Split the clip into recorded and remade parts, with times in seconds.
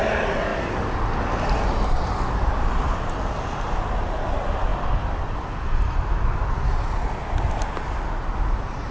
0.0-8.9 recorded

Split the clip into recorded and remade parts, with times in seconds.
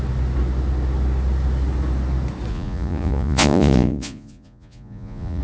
0.0-2.5 recorded; 2.5-5.4 remade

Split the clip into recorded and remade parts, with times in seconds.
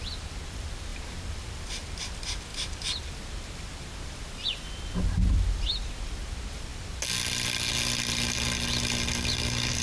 0.0-9.8 recorded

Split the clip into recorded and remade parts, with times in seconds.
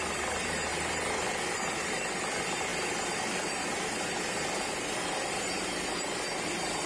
0.0-6.9 recorded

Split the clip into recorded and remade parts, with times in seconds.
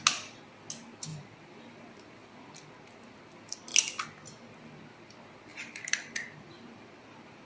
0.0-1.1 recorded; 1.1-1.9 remade; 1.9-5.5 recorded; 5.5-7.5 remade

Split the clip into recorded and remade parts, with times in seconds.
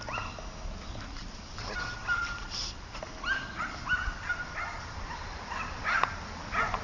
0.0-6.8 recorded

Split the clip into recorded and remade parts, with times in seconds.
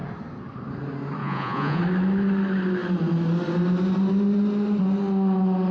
0.0-1.2 recorded; 1.2-1.8 remade; 1.8-5.7 recorded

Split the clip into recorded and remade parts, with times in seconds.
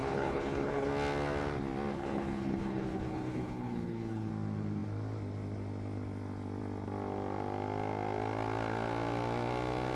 0.0-0.9 remade; 0.9-1.9 recorded; 1.9-4.3 remade; 4.3-9.9 recorded